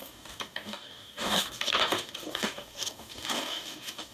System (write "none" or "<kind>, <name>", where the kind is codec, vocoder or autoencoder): codec, DAC